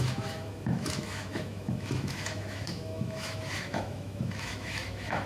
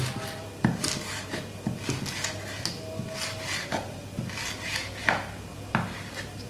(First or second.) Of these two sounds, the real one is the second